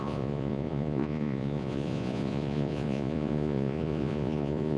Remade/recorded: remade